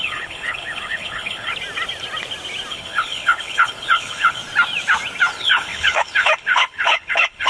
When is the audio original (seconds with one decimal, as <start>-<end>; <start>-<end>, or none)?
1.5-2.7; 4.4-5.3